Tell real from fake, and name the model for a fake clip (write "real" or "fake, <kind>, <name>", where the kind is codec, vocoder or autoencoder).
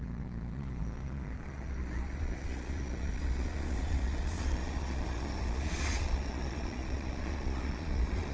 fake, vocoder, Vocos